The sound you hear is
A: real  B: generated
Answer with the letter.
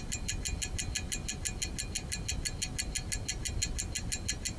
A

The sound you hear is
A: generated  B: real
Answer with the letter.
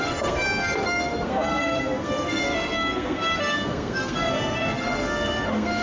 A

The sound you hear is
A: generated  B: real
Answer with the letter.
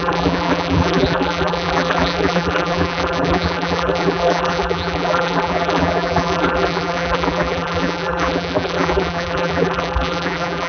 A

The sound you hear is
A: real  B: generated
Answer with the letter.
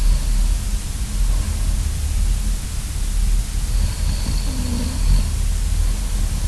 A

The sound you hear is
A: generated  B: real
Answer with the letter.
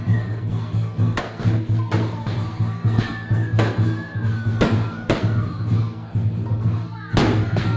A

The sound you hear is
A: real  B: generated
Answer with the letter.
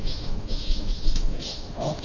B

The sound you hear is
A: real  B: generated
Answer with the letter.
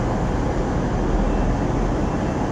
A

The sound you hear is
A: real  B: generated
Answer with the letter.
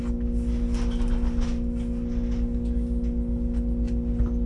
A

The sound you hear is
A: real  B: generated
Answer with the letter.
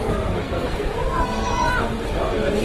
B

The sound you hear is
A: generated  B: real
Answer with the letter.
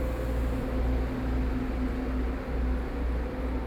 B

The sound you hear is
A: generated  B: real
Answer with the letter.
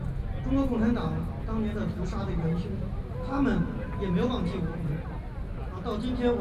B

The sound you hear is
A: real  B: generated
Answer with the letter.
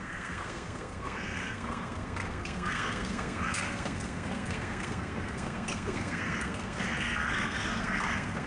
B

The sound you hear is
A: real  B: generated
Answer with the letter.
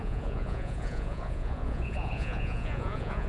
B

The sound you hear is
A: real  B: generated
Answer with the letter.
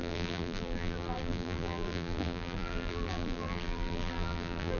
B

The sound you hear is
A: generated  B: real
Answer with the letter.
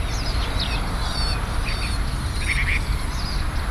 B